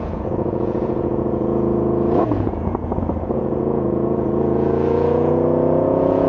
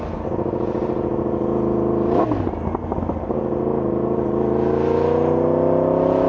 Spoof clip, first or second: first